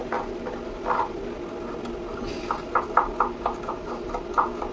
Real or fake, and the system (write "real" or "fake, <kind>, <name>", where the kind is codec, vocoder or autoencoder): real